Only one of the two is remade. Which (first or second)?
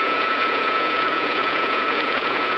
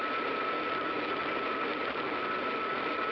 first